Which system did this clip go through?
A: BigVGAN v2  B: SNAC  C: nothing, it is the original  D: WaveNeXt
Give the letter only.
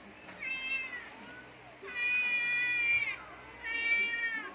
C